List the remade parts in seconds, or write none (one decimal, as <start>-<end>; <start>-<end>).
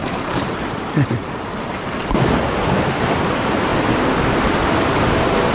0.0-1.3